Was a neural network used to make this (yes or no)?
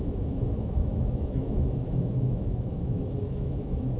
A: yes